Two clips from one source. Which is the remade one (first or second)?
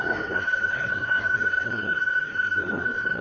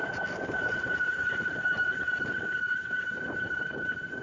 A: first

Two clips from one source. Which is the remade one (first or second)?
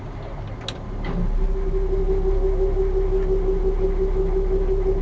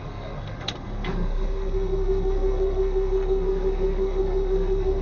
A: second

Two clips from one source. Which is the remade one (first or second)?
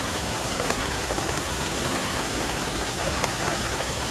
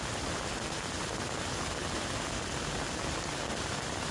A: first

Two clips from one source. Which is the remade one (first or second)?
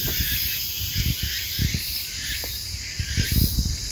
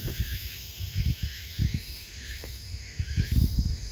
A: second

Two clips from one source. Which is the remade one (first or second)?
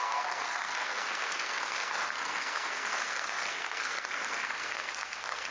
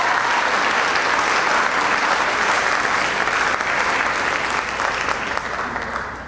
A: first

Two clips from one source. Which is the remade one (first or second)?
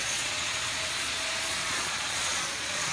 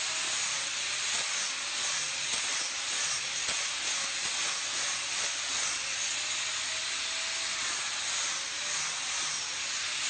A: first